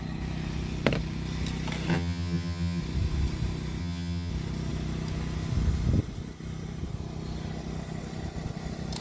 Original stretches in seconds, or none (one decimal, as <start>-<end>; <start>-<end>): 0.0-1.9; 2.8-3.8; 4.3-9.0